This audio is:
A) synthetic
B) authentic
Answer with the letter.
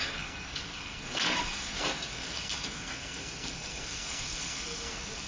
A